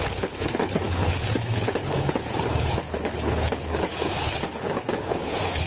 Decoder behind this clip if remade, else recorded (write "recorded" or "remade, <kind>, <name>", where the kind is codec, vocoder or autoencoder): remade, codec, HILCodec